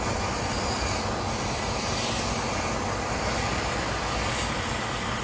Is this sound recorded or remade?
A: recorded